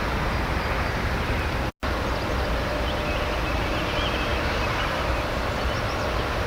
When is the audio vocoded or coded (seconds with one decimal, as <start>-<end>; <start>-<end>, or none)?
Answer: none